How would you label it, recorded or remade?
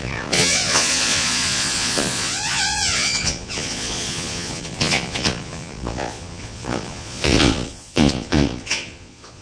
remade